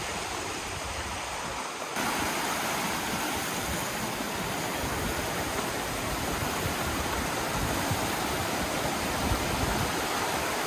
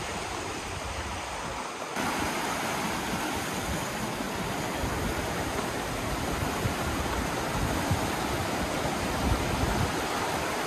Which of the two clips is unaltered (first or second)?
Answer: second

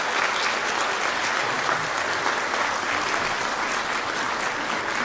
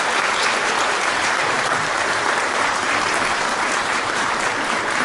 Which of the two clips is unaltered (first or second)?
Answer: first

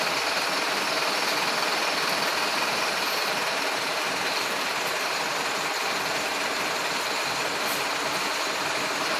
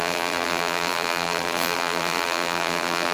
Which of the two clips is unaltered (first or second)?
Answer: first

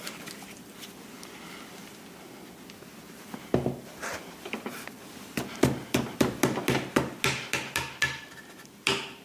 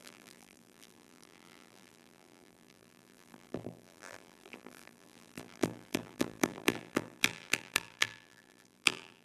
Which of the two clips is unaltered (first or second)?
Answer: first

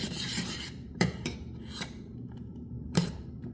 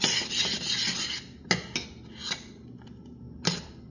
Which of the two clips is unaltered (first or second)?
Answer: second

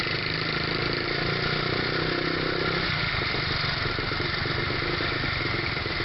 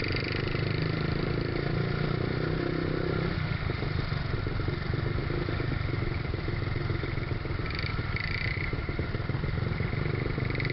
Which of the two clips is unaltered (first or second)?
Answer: first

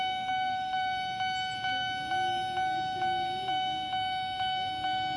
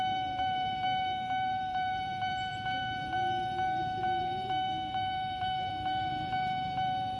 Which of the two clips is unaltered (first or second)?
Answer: first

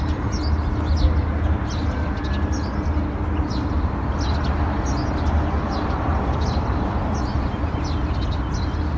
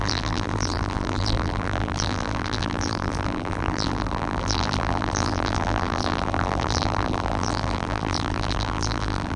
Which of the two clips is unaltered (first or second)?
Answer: first